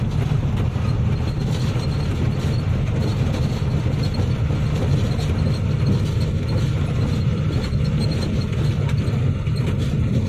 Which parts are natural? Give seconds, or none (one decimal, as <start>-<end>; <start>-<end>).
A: 0.0-10.3